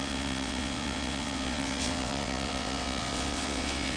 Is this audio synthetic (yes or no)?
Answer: yes